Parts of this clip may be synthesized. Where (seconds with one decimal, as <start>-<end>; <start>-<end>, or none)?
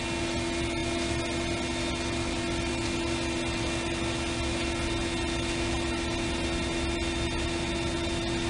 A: none